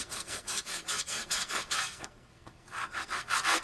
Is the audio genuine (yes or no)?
no